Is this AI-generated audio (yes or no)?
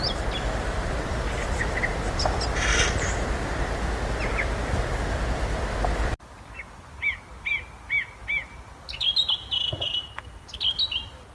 no